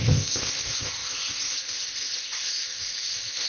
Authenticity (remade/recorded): remade